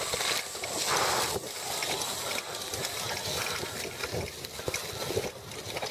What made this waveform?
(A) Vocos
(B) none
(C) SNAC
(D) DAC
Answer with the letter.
B